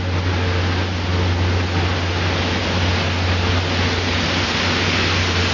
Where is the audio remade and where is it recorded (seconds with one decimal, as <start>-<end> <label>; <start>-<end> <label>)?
0.0-5.5 recorded